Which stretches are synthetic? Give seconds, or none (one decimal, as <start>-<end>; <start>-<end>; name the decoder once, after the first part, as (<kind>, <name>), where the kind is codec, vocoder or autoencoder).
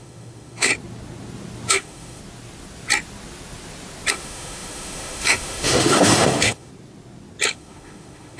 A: 0.0-0.7 (autoencoder, DAC-VAE); 1.7-2.2; 4.1-6.7; 7.5-8.4